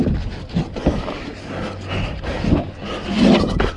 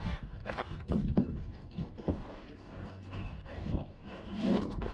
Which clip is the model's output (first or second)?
second